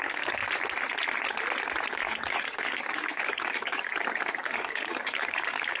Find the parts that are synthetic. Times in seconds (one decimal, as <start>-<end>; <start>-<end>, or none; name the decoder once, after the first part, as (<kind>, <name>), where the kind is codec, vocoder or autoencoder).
0.0-0.4 (codec, DAC); 1.9-3.9; 4.4-5.8